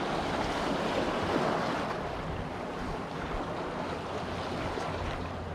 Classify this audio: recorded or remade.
recorded